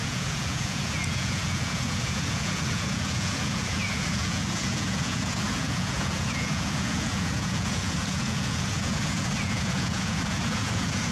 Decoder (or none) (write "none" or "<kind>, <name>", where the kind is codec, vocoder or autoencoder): vocoder, Vocos